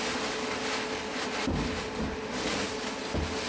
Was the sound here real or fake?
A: real